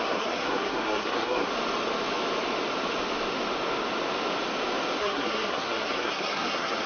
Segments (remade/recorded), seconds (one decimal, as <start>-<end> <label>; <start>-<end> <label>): 0.0-1.5 remade; 1.5-5.0 recorded; 5.0-6.9 remade

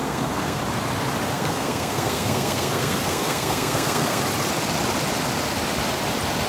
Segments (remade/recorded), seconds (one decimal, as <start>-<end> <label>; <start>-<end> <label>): 0.0-0.6 remade; 0.6-1.3 recorded; 1.3-4.2 remade; 4.2-6.5 recorded

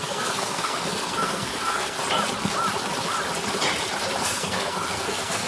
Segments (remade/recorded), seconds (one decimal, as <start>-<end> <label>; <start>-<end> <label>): 0.0-2.0 remade; 2.0-4.2 recorded; 4.2-5.5 remade